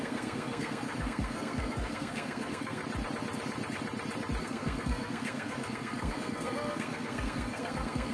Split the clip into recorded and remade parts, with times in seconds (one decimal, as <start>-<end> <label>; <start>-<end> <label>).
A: 0.0-2.8 remade; 2.8-4.4 recorded; 4.4-8.1 remade